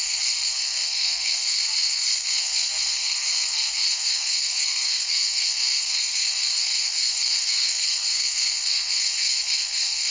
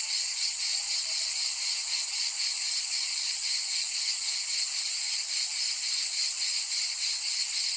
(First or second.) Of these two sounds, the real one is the second